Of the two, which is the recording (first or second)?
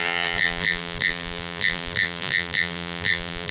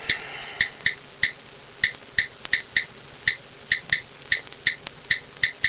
second